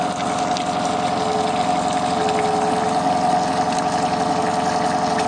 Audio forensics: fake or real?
real